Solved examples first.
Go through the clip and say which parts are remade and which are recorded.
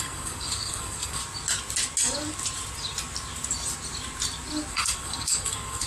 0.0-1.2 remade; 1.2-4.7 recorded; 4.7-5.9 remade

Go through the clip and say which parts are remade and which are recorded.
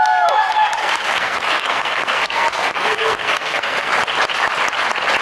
0.0-3.9 remade; 3.9-5.2 recorded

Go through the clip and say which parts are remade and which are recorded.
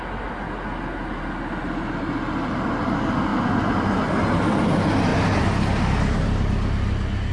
0.0-7.3 recorded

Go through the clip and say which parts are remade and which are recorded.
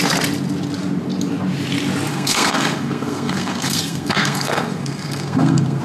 0.0-2.1 recorded; 2.1-5.8 remade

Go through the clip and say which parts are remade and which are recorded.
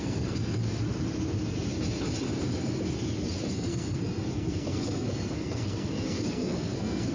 0.0-0.6 remade; 0.6-3.5 recorded; 3.5-7.1 remade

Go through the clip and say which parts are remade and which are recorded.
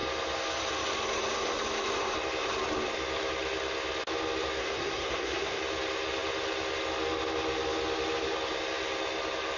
0.0-4.6 recorded; 4.6-5.6 remade; 5.6-9.6 recorded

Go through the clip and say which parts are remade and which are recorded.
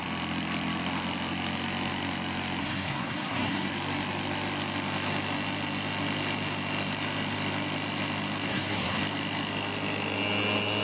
0.0-2.6 recorded; 2.6-3.7 remade; 3.7-8.5 recorded; 8.5-9.0 remade; 9.0-10.8 recorded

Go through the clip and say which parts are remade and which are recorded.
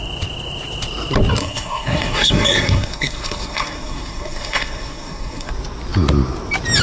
0.0-1.4 recorded; 1.4-5.5 remade; 5.5-6.8 recorded